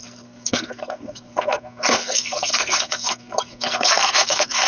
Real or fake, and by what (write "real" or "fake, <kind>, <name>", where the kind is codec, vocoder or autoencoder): fake, codec, SNAC